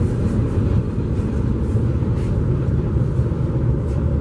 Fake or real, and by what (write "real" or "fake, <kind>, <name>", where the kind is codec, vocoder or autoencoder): real